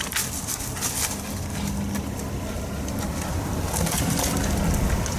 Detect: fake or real real